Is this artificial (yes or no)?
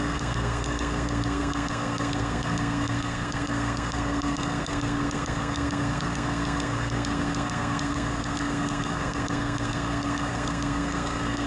yes